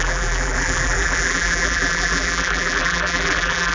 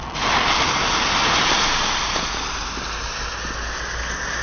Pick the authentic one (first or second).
second